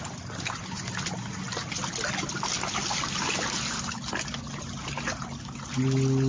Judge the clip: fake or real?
real